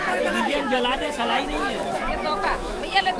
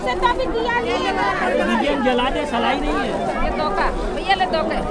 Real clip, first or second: second